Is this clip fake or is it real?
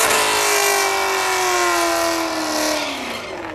real